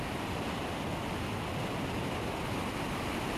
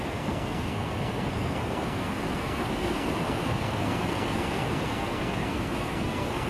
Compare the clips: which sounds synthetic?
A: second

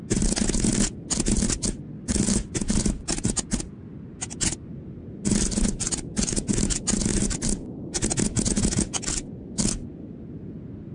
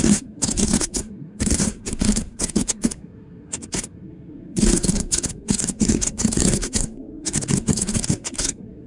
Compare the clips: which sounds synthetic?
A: second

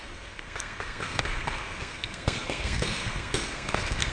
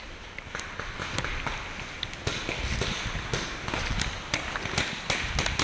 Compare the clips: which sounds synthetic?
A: first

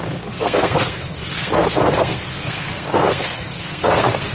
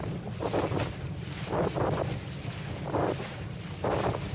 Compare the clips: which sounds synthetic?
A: first